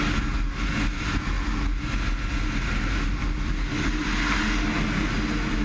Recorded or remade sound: recorded